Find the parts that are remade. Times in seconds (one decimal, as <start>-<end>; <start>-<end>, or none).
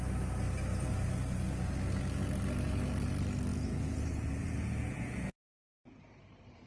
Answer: 3.5-6.0